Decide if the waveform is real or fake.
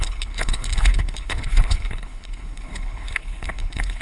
fake